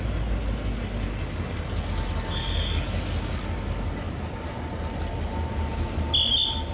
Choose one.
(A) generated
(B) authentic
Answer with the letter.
B